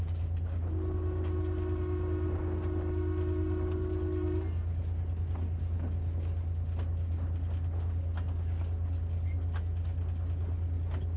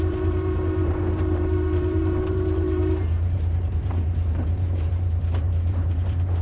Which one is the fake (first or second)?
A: second